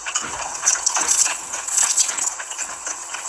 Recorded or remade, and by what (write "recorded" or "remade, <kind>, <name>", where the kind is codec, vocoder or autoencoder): remade, vocoder, WaveNeXt